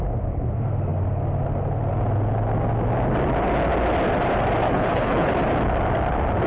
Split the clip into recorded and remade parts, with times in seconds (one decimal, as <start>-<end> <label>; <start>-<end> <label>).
0.0-4.6 recorded; 4.6-5.3 remade; 5.3-6.5 recorded

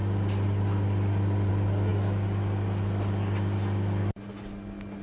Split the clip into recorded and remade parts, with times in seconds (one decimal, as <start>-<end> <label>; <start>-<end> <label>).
0.0-5.0 recorded

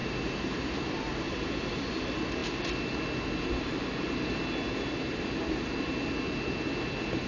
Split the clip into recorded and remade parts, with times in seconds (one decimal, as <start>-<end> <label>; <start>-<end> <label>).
0.0-1.9 remade; 1.9-7.3 recorded

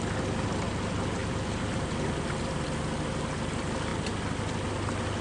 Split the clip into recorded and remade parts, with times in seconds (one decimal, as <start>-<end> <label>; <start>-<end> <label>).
0.0-5.2 recorded

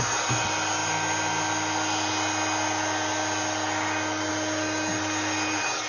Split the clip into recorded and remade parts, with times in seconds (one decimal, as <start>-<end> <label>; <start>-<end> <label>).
0.0-5.9 recorded

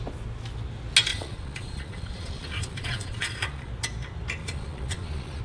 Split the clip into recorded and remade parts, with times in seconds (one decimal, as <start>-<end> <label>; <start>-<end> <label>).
0.0-1.1 recorded; 1.1-3.7 remade; 3.7-4.4 recorded; 4.4-5.4 remade

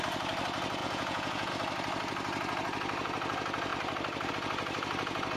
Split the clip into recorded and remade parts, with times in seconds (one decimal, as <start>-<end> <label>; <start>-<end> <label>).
0.0-0.8 recorded; 0.8-1.5 remade; 1.5-5.4 recorded

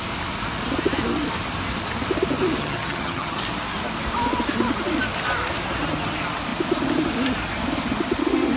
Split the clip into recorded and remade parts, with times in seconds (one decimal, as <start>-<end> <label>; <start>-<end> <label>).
0.0-2.6 recorded; 2.6-3.4 remade; 3.4-8.6 recorded